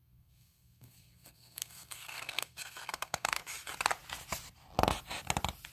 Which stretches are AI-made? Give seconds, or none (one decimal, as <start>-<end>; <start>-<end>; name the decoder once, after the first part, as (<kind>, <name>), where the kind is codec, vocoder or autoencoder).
0.0-3.4 (codec, SNAC)

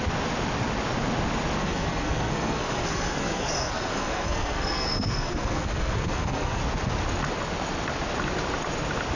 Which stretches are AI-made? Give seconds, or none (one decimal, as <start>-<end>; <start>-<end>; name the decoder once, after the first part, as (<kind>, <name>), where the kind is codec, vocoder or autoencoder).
1.6-6.6 (codec, SNAC)

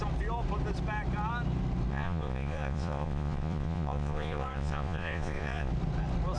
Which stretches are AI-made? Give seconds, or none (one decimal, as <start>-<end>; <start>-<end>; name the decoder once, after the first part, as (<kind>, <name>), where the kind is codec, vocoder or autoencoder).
1.9-5.7 (vocoder, Vocos)

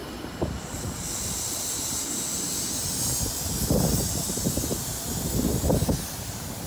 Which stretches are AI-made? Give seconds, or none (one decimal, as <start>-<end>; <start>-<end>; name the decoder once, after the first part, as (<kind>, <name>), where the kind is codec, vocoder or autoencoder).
0.0-2.9 (vocoder, BigVGAN v2)